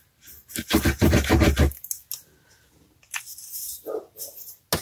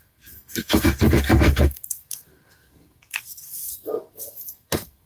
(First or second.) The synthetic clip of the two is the second